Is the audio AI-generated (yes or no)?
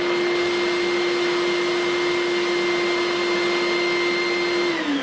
no